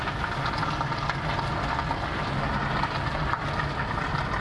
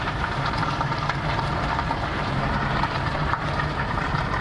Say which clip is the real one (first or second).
first